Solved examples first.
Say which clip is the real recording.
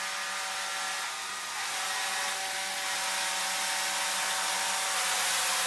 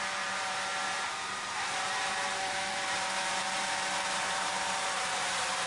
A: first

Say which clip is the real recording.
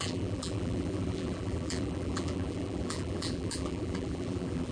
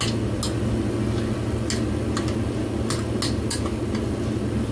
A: second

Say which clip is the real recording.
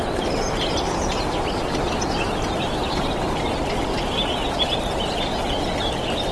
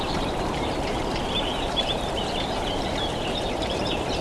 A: first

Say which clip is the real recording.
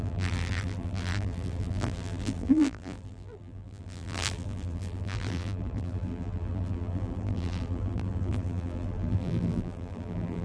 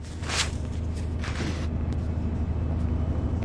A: second